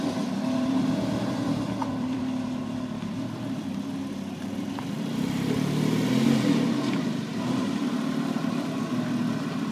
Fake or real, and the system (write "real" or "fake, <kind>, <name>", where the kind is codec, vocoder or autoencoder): fake, vocoder, BigVGAN v2